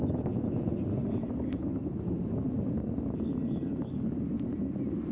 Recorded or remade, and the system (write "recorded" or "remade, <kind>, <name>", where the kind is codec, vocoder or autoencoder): recorded